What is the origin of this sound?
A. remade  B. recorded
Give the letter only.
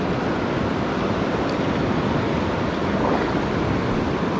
B